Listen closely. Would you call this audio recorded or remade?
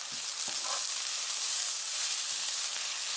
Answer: recorded